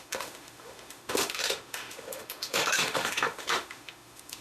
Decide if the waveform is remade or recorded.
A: remade